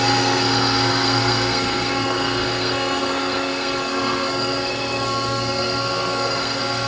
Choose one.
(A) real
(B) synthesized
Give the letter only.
B